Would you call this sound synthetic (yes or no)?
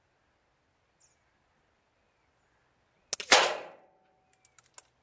no